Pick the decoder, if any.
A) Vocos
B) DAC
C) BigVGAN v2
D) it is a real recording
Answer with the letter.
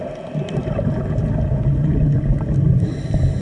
D